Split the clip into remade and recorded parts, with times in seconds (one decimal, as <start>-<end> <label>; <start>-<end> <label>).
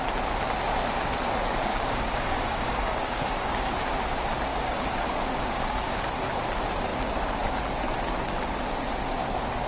0.0-1.7 recorded; 1.7-3.7 remade; 3.7-4.5 recorded; 4.5-6.1 remade; 6.1-9.7 recorded